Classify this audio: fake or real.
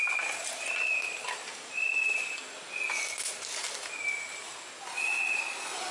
real